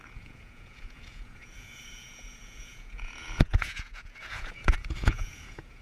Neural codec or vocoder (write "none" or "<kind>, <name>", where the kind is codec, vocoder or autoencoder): vocoder, Vocos